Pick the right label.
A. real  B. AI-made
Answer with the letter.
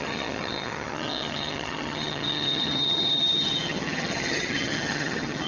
B